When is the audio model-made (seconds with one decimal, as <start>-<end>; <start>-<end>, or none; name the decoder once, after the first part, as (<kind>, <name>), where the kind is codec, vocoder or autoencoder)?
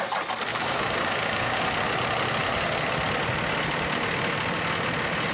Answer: 0.5-1.6 (codec, DAC)